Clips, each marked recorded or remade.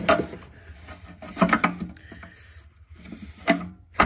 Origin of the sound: recorded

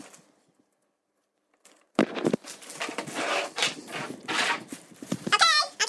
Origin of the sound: recorded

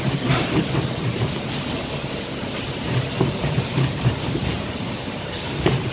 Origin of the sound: remade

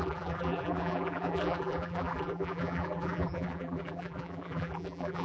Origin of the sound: remade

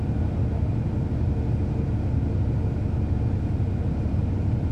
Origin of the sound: recorded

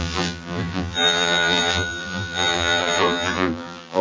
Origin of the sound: remade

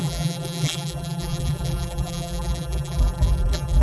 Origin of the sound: remade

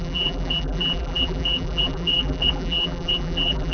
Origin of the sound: remade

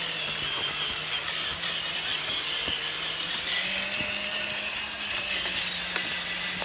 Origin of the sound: recorded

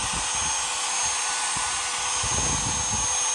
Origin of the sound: recorded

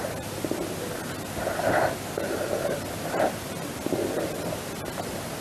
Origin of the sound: recorded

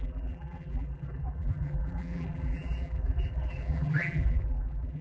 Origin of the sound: remade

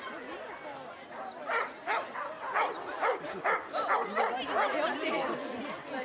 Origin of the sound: recorded